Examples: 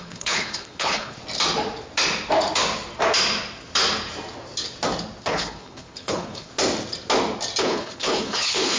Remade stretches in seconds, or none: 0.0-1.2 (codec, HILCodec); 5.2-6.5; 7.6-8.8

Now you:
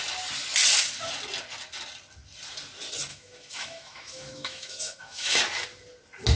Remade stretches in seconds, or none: 3.1-5.4 (autoencoder, DAC-VAE)